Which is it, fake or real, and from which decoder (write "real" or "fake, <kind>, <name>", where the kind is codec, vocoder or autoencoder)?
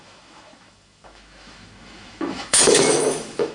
fake, autoencoder, DAC-VAE